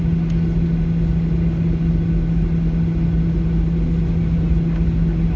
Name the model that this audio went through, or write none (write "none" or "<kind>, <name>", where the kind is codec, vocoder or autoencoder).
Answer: none